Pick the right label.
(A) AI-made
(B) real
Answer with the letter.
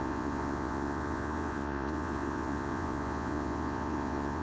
A